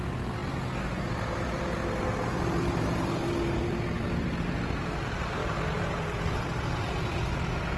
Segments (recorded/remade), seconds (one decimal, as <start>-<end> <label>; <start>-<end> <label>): 0.0-7.8 recorded